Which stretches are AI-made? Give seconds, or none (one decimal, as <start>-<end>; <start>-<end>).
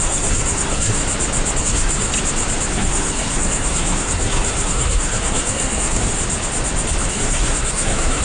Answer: 0.0-1.0; 1.6-2.1; 2.7-6.1; 7.1-8.2